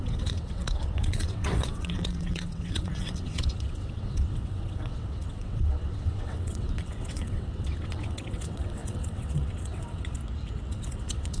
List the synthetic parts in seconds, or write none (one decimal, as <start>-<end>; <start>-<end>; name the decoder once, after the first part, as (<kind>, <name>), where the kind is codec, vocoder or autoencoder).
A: 0.0-10.2 (vocoder, WaveNeXt); 10.7-11.4